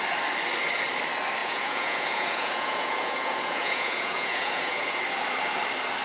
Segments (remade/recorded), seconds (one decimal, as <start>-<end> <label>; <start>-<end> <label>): 0.0-1.4 recorded; 1.4-5.0 remade; 5.0-6.0 recorded